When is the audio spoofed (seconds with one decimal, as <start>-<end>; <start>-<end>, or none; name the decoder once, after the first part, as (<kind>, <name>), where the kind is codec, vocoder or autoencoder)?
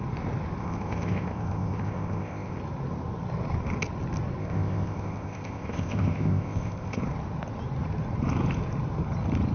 0.6-2.6 (codec, ZipCodec); 4.4-7.0